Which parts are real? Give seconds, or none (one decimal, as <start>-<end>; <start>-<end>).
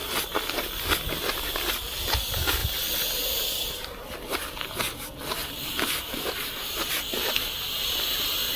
0.0-2.6; 4.8-5.4; 7.0-8.6